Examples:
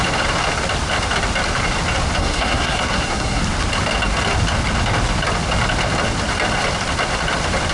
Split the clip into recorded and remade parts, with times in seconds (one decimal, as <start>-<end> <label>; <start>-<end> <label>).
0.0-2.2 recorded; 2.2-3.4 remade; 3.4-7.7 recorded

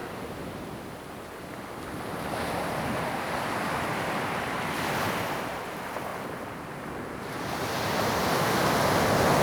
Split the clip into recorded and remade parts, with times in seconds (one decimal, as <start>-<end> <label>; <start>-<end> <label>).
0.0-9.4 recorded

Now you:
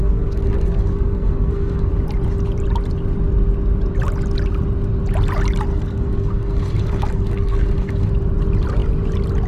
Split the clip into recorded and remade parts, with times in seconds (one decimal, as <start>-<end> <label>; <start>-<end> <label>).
0.0-1.9 remade; 1.9-5.7 recorded; 5.7-8.1 remade; 8.1-9.5 recorded

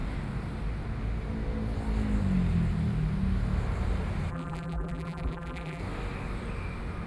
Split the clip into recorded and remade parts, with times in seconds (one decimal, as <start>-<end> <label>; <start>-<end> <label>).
0.0-4.3 recorded; 4.3-5.8 remade; 5.8-7.1 recorded